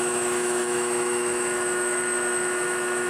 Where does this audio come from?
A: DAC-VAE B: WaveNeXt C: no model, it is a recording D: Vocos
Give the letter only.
A